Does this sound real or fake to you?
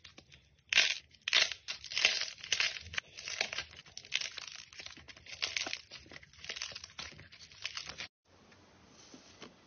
real